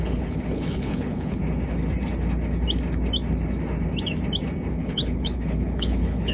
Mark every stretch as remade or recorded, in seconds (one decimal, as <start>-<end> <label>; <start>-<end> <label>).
0.0-1.4 remade; 1.4-4.7 recorded; 4.7-6.3 remade